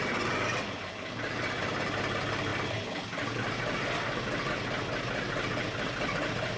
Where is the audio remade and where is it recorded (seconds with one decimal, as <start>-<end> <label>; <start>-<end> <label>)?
0.0-6.6 recorded